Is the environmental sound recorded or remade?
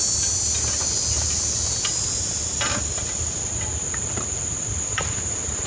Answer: recorded